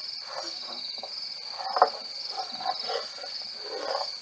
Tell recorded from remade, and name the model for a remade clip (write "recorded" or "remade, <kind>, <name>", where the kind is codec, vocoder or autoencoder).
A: recorded